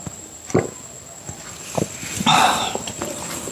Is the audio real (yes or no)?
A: no